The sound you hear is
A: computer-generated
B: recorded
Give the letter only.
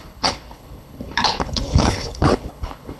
A